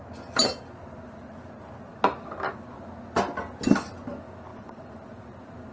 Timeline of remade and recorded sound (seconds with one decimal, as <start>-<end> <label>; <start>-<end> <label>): 0.0-4.5 recorded; 4.5-5.2 remade; 5.2-5.7 recorded